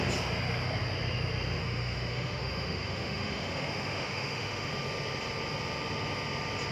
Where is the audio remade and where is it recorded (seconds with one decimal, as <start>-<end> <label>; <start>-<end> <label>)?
0.0-1.6 recorded; 1.6-4.7 remade; 4.7-6.7 recorded